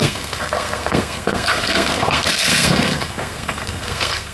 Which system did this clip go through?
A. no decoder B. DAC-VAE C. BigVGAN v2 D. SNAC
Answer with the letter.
D